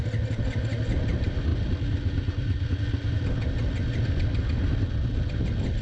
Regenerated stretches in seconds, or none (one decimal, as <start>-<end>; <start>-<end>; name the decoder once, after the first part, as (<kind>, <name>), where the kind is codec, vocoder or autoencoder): none